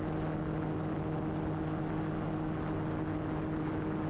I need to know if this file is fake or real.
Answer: real